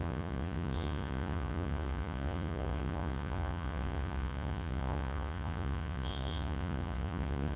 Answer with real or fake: fake